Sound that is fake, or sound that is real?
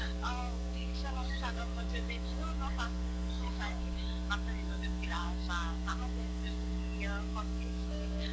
fake